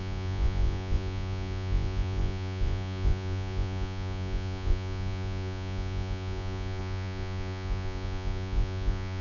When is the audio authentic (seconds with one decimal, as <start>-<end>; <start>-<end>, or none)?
none